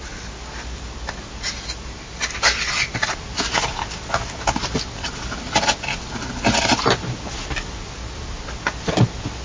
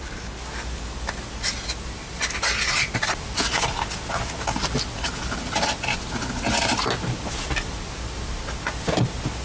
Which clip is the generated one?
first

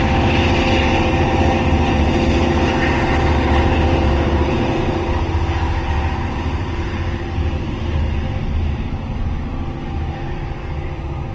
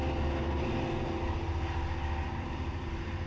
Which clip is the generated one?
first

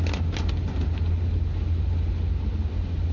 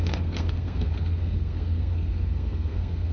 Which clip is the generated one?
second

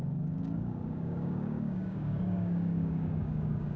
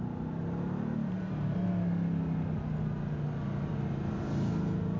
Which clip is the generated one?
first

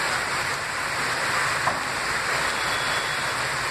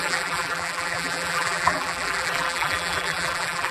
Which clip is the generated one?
second